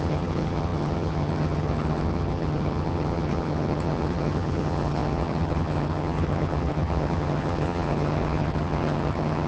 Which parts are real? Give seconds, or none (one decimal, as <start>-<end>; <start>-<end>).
none